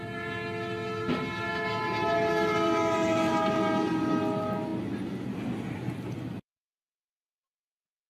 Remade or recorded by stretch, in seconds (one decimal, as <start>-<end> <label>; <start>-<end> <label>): 0.0-8.1 recorded